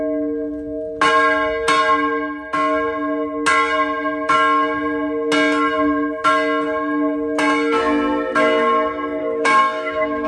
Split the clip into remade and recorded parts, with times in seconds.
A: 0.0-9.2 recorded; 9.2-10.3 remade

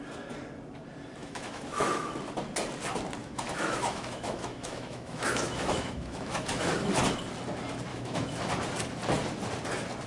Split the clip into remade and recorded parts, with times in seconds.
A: 0.0-1.2 recorded; 1.2-2.1 remade; 2.1-3.2 recorded; 3.2-6.7 remade; 6.7-7.9 recorded; 7.9-8.5 remade; 8.5-10.1 recorded

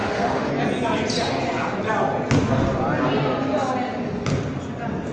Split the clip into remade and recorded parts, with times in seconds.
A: 0.0-0.5 remade; 0.5-5.1 recorded

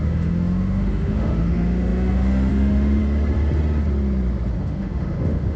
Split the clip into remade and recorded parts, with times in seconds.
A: 0.0-3.0 remade; 3.0-4.6 recorded; 4.6-5.6 remade